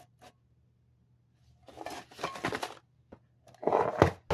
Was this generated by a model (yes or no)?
no